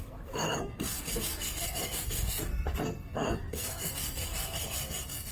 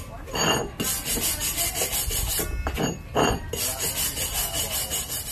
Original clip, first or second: second